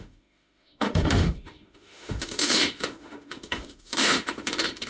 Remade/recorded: remade